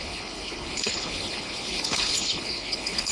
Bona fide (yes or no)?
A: no